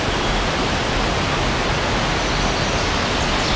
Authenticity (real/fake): real